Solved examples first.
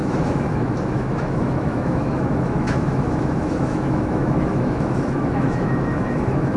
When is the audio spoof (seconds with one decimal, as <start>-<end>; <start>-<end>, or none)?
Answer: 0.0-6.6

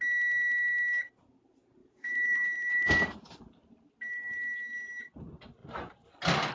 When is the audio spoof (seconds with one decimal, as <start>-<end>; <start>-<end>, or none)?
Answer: 1.8-3.9

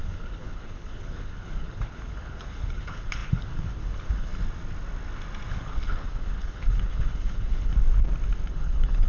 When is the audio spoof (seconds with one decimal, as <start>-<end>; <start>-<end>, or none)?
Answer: 0.0-4.3; 5.5-7.7; 8.5-9.1

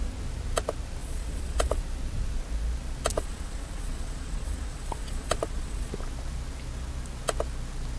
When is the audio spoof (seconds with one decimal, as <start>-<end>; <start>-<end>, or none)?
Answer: 1.0-1.8; 3.1-5.9

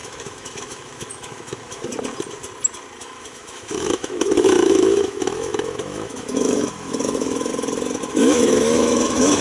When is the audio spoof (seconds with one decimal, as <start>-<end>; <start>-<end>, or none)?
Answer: 0.0-1.9; 3.0-7.5; 8.1-9.4

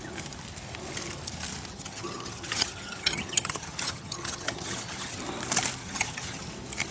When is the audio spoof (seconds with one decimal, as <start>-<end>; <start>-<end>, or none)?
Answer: 1.7-5.2; 5.8-6.5

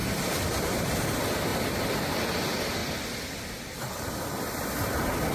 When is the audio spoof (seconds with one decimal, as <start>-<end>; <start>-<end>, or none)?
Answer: 0.6-5.3